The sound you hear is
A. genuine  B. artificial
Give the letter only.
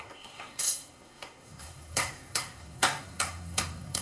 B